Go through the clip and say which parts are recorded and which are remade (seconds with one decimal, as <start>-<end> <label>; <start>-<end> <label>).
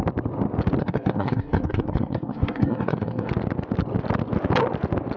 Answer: 0.0-0.8 recorded; 0.8-3.3 remade; 3.3-5.2 recorded